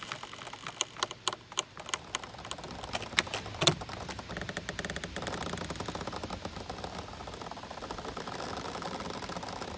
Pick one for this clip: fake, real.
real